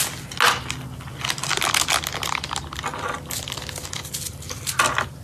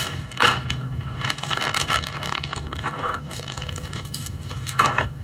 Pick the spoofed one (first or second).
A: second